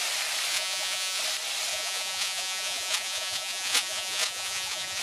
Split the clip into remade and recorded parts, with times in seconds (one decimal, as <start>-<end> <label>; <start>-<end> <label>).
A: 0.0-0.5 recorded; 0.5-1.2 remade; 1.2-1.7 recorded; 1.7-5.0 remade